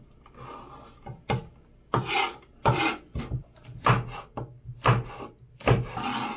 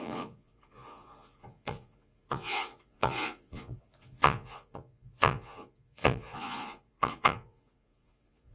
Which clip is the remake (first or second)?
second